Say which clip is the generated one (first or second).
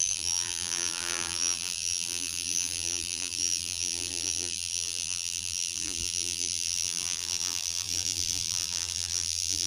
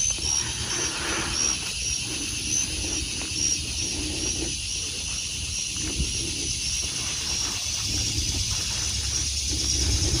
first